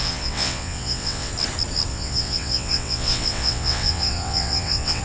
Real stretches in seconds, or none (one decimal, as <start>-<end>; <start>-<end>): 1.3-1.9